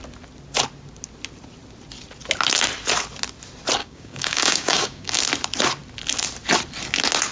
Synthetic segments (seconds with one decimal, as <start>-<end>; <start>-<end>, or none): 3.8-5.2